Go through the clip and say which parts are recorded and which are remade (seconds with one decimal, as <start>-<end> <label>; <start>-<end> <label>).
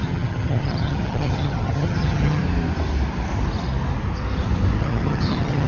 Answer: 0.0-2.4 remade; 2.4-4.8 recorded; 4.8-5.7 remade